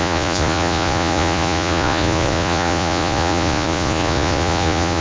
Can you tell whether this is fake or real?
fake